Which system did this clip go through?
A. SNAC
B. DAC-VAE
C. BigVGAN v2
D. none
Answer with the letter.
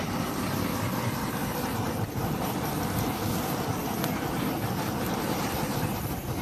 D